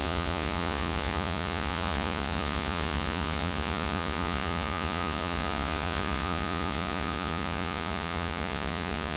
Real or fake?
fake